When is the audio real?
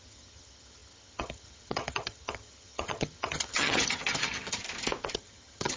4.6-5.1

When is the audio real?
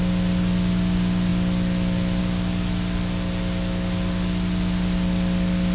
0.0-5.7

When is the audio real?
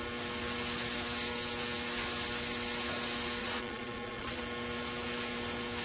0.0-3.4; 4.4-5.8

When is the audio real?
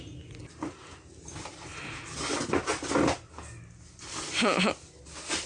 0.0-5.5